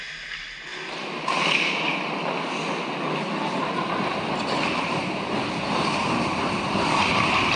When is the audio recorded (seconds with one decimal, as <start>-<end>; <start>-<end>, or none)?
0.0-7.6